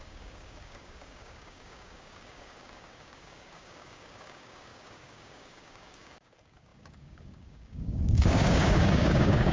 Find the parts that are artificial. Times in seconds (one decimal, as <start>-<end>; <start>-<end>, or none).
0.0-9.5